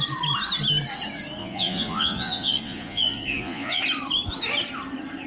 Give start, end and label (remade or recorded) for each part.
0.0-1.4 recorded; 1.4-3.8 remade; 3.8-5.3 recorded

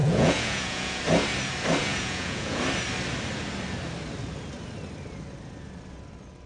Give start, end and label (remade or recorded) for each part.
0.0-1.0 remade; 1.0-1.8 recorded; 1.8-2.6 remade; 2.6-6.5 recorded

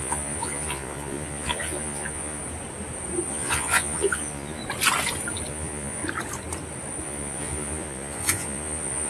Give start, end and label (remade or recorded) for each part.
0.0-2.4 remade; 2.4-3.3 recorded; 3.3-4.6 remade; 4.6-5.5 recorded; 5.5-6.0 remade; 6.0-7.0 recorded; 7.0-9.1 remade

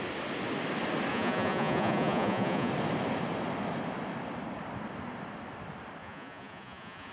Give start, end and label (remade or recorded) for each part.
0.0-1.1 recorded; 1.1-2.7 remade; 2.7-6.0 recorded; 6.0-7.1 remade